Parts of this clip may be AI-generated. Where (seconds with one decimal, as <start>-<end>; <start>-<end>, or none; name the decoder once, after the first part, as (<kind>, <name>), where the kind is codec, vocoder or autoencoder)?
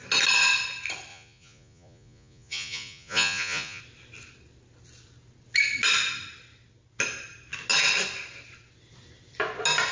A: 1.1-3.8 (vocoder, Vocos)